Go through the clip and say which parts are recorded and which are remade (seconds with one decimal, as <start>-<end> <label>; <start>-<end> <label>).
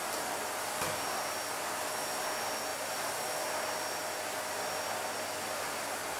0.0-2.7 recorded; 2.7-3.2 remade; 3.2-6.2 recorded